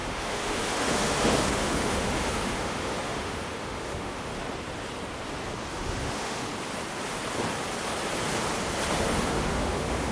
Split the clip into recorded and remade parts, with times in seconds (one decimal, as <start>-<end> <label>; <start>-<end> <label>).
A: 0.0-4.3 remade; 4.3-5.7 recorded; 5.7-6.5 remade; 6.5-9.2 recorded; 9.2-10.1 remade